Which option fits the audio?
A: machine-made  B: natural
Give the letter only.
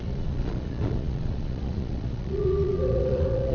A